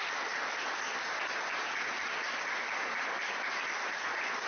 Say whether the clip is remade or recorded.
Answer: recorded